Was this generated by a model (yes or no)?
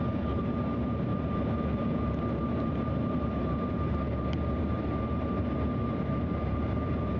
yes